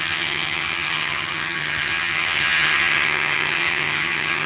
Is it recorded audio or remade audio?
remade